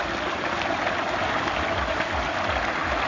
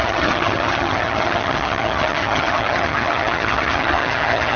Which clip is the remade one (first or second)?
second